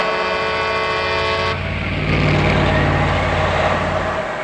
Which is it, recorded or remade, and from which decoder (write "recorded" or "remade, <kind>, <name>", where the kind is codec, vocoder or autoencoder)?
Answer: recorded